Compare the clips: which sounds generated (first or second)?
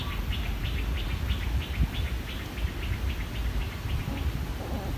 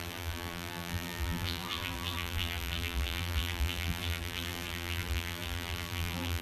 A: second